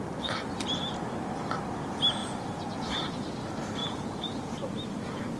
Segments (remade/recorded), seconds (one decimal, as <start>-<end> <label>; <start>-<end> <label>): 0.0-2.2 recorded; 2.2-3.0 remade; 3.0-3.8 recorded; 3.8-4.5 remade; 4.5-5.4 recorded